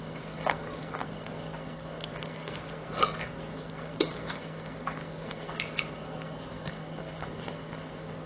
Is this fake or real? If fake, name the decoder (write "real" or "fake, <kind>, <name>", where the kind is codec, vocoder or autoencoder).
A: fake, codec, SNAC